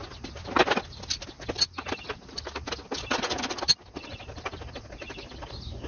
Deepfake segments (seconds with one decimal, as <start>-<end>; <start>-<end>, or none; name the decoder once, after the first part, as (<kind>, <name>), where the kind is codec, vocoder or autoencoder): none